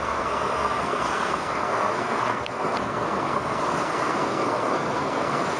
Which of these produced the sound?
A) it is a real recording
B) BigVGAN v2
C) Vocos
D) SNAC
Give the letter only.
D